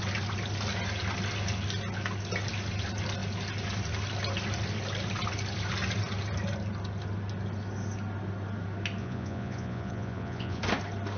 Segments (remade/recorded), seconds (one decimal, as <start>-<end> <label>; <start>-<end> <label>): 0.0-9.0 recorded; 9.0-10.6 remade; 10.6-11.2 recorded